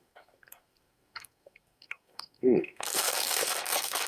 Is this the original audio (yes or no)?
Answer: no